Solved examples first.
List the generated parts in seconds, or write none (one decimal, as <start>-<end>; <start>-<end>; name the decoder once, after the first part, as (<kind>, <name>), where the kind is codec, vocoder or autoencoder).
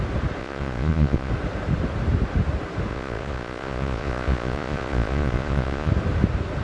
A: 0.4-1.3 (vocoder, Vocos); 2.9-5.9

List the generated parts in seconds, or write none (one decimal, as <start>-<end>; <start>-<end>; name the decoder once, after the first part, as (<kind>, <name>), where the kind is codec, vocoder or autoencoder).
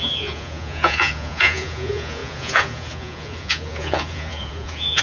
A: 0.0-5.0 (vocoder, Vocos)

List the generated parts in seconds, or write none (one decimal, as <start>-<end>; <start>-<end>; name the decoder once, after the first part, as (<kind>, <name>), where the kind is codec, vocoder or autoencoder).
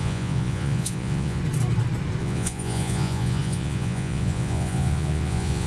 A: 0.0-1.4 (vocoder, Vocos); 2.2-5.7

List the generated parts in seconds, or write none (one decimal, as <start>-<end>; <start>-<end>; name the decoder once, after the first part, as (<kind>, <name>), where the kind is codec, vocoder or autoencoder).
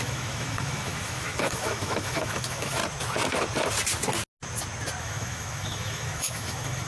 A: 0.0-2.8 (autoencoder, DAC-VAE); 5.0-6.9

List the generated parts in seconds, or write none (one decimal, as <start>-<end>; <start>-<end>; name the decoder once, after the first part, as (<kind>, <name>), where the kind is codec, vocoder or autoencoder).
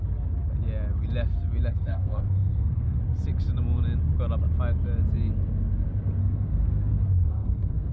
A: 1.7-3.0 (codec, SNAC); 6.2-7.9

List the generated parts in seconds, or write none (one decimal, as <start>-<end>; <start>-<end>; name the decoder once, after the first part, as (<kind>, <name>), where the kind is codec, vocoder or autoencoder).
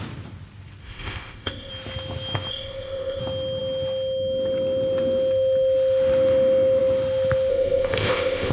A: 0.8-1.7 (codec, ZipCodec); 2.5-3.2; 7.5-8.5